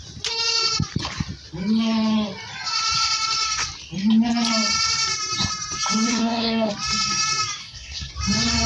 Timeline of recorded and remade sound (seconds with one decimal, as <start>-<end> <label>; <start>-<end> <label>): 0.0-6.1 recorded; 6.1-6.7 remade; 6.7-7.6 recorded; 7.6-8.1 remade; 8.1-8.7 recorded